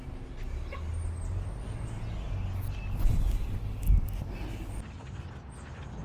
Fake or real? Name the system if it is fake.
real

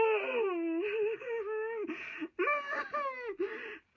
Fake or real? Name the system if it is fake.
real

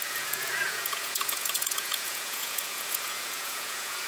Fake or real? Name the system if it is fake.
fake, vocoder, Vocos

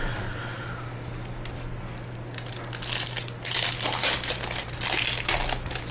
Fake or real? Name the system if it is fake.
real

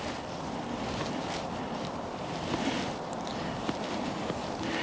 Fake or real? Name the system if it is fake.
fake, vocoder, BigVGAN v2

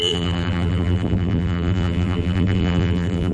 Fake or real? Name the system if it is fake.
fake, vocoder, BigVGAN v2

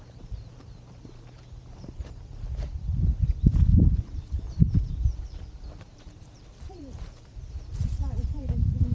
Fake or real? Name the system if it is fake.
fake, vocoder, BigVGAN v2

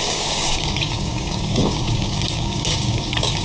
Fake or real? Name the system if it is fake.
fake, codec, DAC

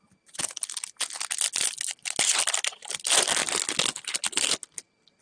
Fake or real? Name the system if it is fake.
real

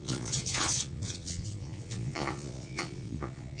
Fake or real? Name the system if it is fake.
fake, vocoder, Vocos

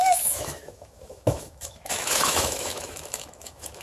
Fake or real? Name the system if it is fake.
fake, autoencoder, DAC-VAE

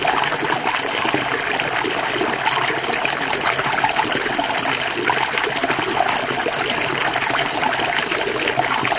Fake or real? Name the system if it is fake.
real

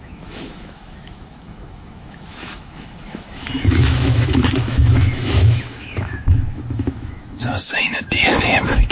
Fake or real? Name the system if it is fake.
fake, autoencoder, DAC-VAE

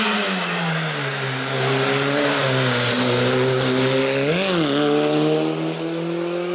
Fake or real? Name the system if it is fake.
real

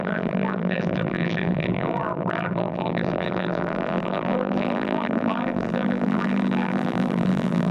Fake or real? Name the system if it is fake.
fake, vocoder, BigVGAN v2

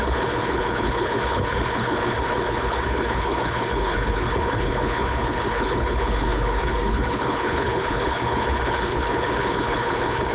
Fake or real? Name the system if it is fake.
fake, codec, HILCodec